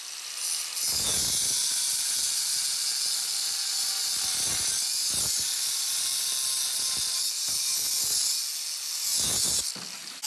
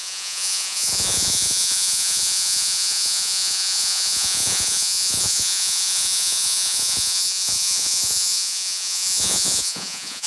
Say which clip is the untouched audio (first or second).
first